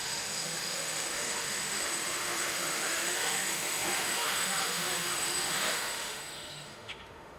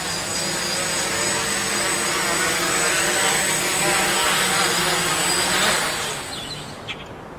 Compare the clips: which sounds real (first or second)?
second